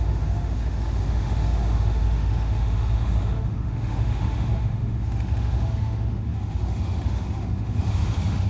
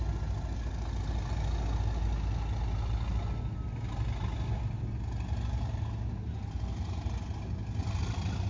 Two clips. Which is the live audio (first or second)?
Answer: second